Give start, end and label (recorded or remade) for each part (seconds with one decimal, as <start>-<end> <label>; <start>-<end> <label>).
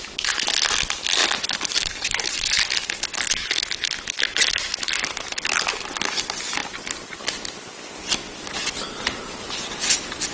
0.0-1.2 recorded; 1.2-2.9 remade; 2.9-8.3 recorded; 8.3-9.4 remade; 9.4-10.3 recorded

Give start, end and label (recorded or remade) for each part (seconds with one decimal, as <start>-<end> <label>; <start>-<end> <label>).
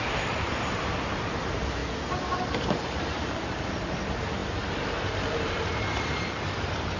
0.0-1.8 remade; 1.8-2.4 recorded; 2.4-7.0 remade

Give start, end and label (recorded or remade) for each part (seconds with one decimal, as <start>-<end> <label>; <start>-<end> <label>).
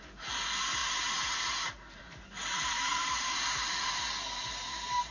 0.0-0.8 recorded; 0.8-3.9 remade; 3.9-5.1 recorded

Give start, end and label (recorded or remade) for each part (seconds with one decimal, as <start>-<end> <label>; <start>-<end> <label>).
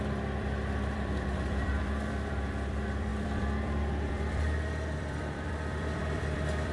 0.0-6.7 remade